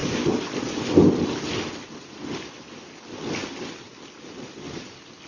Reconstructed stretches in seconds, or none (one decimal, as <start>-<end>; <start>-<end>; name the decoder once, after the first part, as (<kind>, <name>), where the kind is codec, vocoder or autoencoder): 2.0-5.3 (vocoder, BigVGAN v2)